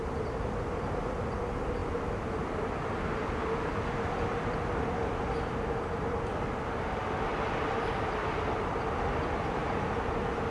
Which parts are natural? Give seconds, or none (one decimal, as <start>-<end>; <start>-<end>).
0.0-10.5